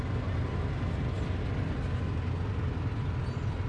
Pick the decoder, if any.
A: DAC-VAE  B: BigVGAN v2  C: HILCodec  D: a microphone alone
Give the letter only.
D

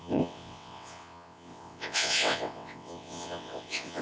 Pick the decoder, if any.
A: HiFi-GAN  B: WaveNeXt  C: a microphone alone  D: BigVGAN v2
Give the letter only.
B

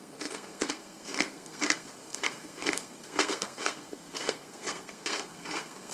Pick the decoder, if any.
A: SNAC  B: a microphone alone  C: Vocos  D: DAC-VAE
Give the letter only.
A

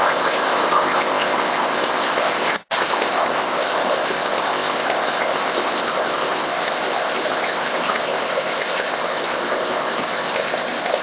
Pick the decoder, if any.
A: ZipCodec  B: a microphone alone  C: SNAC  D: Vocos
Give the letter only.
A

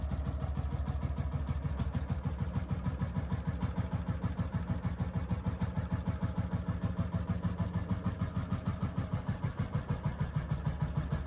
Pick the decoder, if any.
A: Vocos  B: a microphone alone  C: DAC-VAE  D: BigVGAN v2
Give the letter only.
B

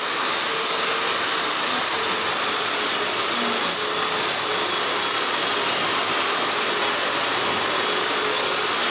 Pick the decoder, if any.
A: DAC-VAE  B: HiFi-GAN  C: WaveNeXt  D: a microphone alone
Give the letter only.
D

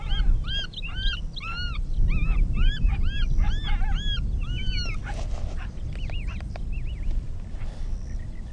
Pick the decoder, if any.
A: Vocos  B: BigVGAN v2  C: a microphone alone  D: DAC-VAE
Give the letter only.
C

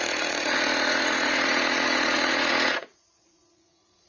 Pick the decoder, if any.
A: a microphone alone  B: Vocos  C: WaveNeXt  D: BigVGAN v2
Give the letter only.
B